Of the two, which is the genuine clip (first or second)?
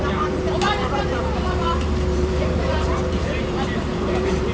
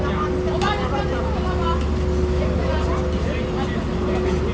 second